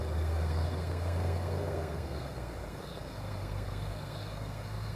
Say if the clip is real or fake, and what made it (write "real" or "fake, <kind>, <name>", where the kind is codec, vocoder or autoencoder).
fake, codec, SNAC